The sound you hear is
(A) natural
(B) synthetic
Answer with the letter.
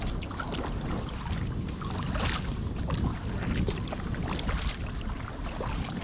A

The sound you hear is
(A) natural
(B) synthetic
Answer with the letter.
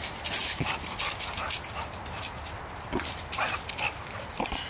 A